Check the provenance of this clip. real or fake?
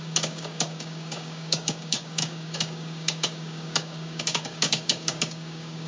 fake